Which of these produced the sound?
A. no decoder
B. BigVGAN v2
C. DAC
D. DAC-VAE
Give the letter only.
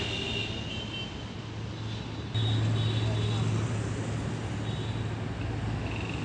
A